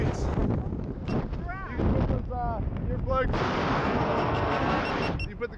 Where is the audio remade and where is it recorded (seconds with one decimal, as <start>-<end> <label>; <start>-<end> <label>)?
0.0-3.8 recorded; 3.8-4.8 remade; 4.8-5.6 recorded